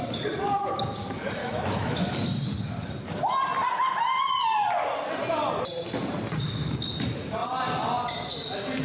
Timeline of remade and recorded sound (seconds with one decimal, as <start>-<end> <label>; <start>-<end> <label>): 0.0-1.4 recorded; 1.4-2.0 remade; 2.0-8.8 recorded